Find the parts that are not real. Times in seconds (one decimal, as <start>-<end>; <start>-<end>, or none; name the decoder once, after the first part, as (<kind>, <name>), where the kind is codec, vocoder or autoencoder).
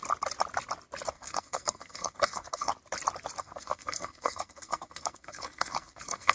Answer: 1.1-2.7 (codec, SNAC); 3.4-6.3